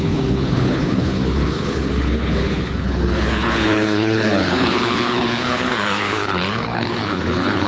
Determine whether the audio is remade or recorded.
remade